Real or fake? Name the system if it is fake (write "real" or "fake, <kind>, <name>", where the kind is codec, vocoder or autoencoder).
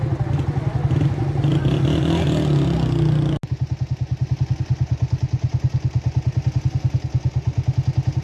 real